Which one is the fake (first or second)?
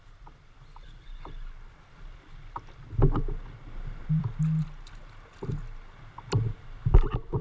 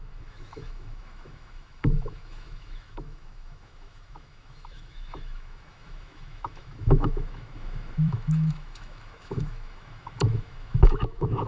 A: second